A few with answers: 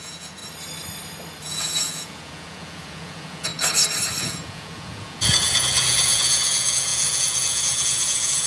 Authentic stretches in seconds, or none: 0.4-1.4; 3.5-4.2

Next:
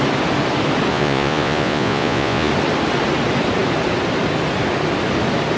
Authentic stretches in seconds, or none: 0.0-0.9; 2.5-5.6

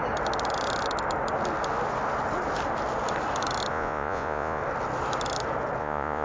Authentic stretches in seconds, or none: 0.0-3.7; 4.6-5.8